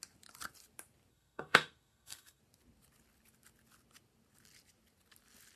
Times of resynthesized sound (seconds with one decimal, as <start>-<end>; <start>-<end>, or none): 1.1-2.4